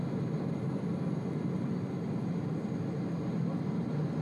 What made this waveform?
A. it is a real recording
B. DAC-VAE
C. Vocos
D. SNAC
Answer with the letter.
A